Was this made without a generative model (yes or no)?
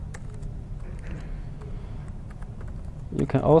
yes